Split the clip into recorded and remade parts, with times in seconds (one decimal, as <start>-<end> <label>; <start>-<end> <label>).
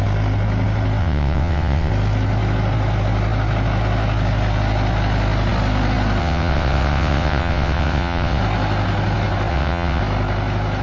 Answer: 0.0-1.0 recorded; 1.0-1.9 remade; 1.9-6.2 recorded; 6.2-8.4 remade; 8.4-9.5 recorded; 9.5-10.0 remade; 10.0-10.8 recorded